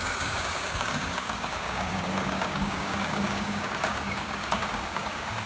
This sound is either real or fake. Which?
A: fake